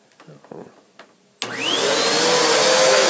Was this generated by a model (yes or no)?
no